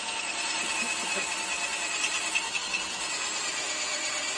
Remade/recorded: recorded